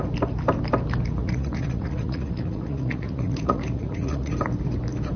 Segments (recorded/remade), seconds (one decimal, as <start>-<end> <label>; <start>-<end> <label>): 0.0-1.2 recorded; 1.2-4.3 remade; 4.3-5.2 recorded